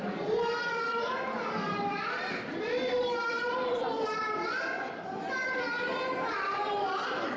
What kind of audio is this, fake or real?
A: fake